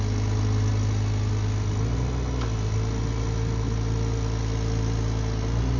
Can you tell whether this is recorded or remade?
recorded